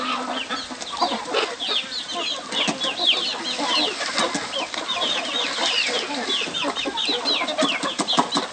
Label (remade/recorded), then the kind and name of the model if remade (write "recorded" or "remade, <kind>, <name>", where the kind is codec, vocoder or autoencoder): recorded